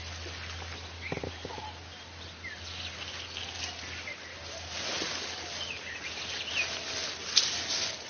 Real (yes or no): yes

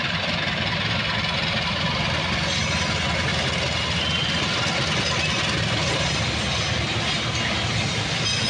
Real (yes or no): yes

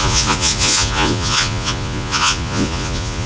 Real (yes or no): no